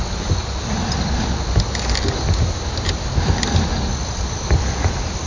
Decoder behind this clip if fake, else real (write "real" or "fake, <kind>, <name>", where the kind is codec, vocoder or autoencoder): real